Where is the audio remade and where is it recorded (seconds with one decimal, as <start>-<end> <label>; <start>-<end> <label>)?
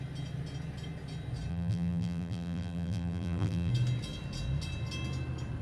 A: 0.0-1.5 recorded; 1.5-3.7 remade; 3.7-5.6 recorded